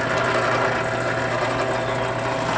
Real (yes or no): yes